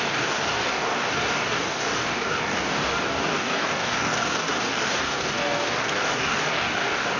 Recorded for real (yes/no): no